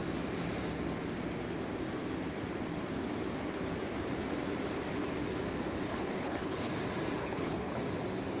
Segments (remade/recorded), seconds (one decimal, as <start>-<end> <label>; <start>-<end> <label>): 0.0-5.9 recorded; 5.9-6.7 remade; 6.7-7.2 recorded; 7.2-7.8 remade; 7.8-8.4 recorded